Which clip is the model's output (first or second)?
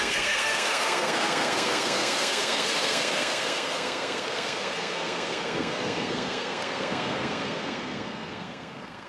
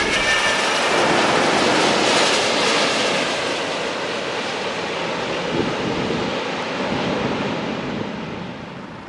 first